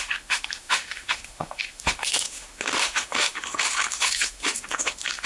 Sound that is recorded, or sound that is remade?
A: remade